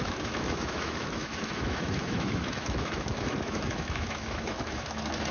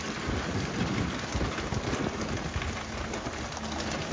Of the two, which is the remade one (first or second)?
first